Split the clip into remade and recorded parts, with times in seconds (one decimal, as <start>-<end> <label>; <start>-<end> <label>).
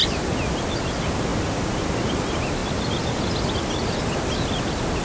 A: 0.0-5.0 recorded